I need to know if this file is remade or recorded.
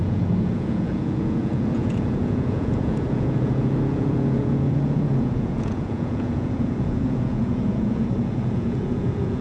remade